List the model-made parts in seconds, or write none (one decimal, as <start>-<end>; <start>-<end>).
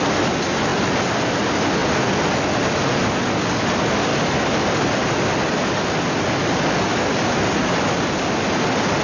none